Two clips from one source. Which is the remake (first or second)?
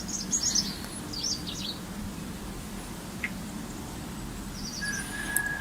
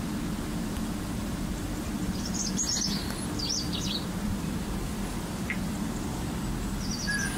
second